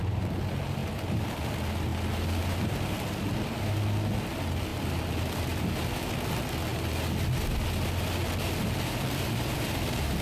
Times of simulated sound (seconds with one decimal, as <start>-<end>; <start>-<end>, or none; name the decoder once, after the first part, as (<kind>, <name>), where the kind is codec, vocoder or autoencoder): 0.8-1.3 (vocoder, BigVGAN v2)